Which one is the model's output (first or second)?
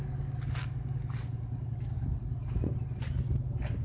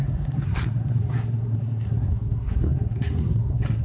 second